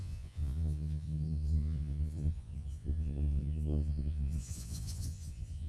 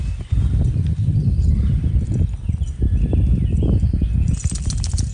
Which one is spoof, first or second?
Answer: first